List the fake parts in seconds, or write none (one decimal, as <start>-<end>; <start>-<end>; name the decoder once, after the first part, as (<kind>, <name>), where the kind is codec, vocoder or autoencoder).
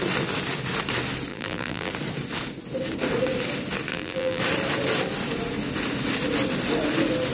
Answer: 1.3-1.9 (vocoder, BigVGAN v2); 3.9-4.4